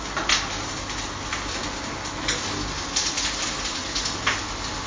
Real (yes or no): yes